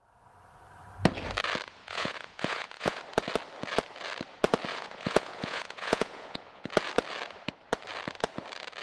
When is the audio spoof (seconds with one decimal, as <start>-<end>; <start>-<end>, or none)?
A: 1.8-3.0; 4.7-6.7